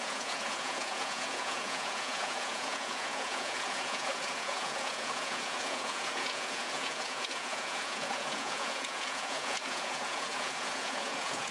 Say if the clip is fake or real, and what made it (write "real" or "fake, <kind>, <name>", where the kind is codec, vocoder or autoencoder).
fake, vocoder, Vocos